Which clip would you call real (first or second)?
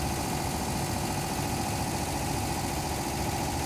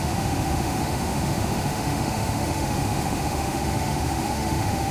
first